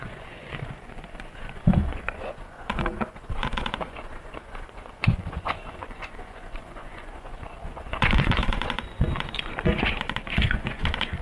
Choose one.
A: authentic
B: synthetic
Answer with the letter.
B